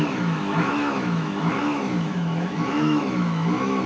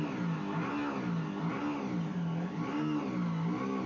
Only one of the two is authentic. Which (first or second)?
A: second